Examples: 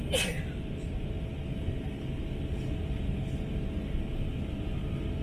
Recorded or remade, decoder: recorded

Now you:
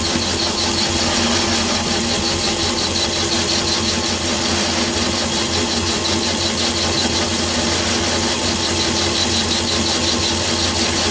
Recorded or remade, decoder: recorded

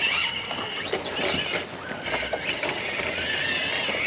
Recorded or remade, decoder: recorded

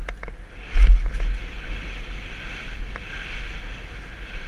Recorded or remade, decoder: recorded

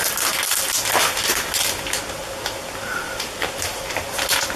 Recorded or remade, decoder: recorded